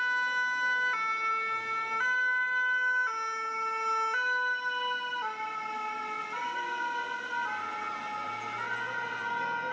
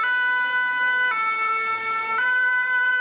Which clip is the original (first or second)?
first